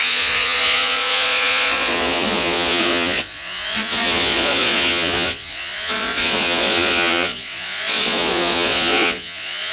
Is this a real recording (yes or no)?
no